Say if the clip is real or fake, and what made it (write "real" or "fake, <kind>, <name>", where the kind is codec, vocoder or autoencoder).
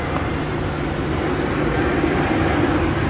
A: real